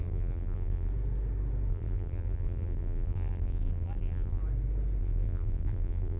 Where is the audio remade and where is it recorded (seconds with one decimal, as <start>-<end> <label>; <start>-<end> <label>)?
0.0-0.9 remade; 0.9-1.7 recorded; 1.7-4.4 remade; 4.4-5.0 recorded; 5.0-6.2 remade